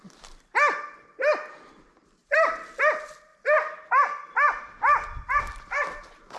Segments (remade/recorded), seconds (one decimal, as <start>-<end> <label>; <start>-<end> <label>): 0.0-6.4 recorded